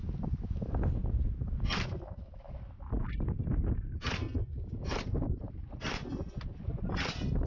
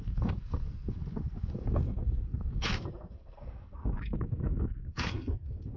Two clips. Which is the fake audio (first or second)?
second